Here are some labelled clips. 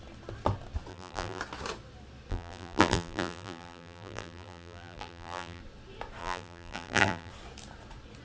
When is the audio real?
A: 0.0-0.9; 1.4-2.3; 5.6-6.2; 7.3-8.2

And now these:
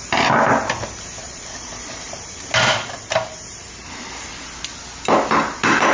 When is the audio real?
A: 0.0-1.2; 2.1-5.9

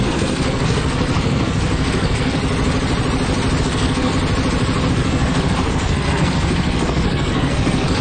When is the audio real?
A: 2.4-3.6; 4.1-4.9

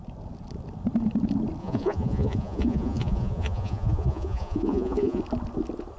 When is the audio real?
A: 0.0-1.6; 5.2-6.0